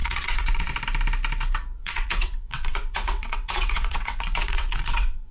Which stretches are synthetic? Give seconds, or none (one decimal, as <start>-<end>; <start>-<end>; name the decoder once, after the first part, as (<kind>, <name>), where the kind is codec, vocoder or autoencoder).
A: 0.0-0.7 (vocoder, WaveNeXt); 1.8-5.3